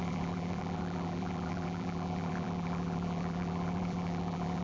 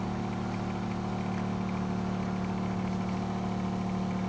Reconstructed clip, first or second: first